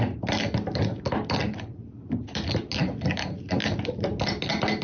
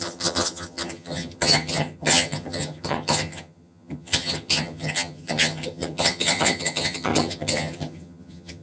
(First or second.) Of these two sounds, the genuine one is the first